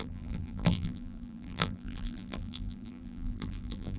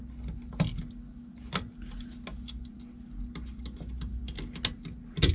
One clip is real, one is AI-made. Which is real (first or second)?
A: second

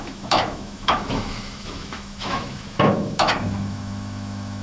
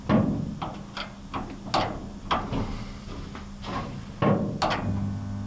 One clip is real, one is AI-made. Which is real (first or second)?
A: second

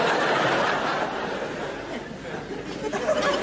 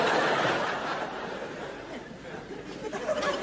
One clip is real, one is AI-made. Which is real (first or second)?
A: first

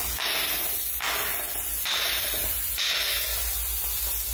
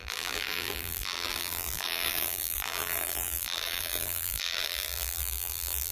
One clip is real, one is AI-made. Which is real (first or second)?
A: first